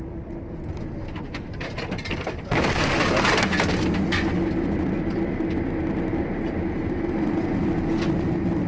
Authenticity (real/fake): real